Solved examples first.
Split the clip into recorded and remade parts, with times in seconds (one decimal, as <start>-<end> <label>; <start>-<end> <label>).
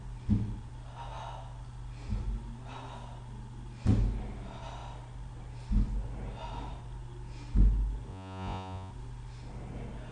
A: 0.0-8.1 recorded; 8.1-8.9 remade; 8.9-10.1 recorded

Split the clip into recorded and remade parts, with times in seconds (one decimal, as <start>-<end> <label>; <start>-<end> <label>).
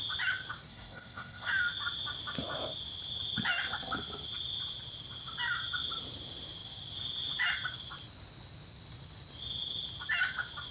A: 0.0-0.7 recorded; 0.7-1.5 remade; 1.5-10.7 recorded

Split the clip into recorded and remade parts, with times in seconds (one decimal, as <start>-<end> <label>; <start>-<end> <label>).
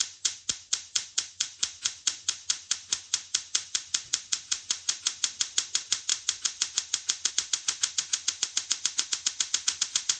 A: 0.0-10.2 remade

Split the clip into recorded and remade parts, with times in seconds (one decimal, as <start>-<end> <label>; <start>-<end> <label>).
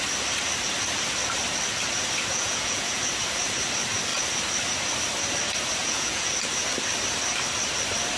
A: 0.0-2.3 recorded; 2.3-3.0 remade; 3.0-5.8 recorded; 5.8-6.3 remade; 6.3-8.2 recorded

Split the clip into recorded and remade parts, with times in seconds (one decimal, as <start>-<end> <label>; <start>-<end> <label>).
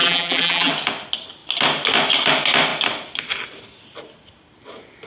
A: 0.0-0.7 remade; 0.7-5.1 recorded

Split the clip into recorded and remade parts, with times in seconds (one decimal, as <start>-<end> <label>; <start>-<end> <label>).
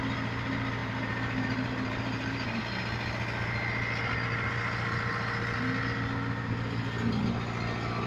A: 0.0-0.8 recorded; 0.8-2.6 remade; 2.6-8.1 recorded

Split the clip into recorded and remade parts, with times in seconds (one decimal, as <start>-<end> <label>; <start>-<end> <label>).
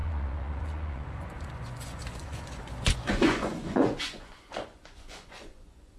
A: 0.0-6.0 remade